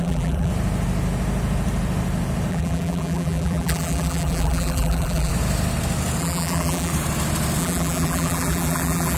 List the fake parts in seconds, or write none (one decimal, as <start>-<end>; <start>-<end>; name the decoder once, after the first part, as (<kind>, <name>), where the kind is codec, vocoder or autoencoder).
0.0-0.5 (vocoder, BigVGAN v2); 2.5-5.3; 6.2-6.9; 7.6-9.2